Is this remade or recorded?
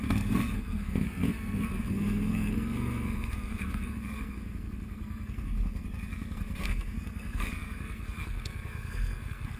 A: remade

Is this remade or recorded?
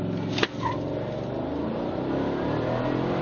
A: recorded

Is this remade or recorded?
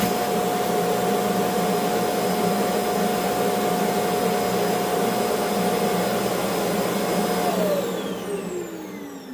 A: recorded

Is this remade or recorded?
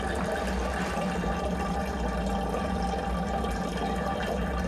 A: recorded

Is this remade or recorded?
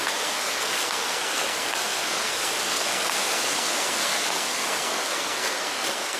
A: remade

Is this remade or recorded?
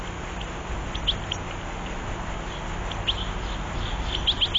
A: recorded